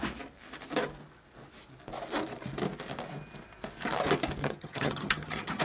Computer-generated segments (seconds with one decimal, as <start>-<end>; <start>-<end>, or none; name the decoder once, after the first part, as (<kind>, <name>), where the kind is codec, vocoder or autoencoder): 4.4-5.6 (vocoder, HiFi-GAN)